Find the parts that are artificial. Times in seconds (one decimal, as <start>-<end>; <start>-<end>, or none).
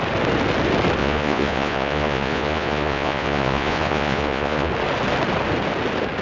1.0-4.7